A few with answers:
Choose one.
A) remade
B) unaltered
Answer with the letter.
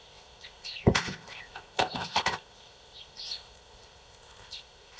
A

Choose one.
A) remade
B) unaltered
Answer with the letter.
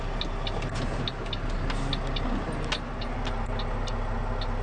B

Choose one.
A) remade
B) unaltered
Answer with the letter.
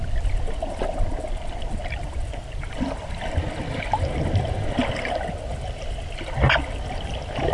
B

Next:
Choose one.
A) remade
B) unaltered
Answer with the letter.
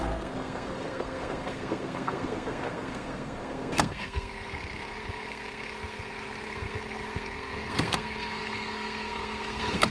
A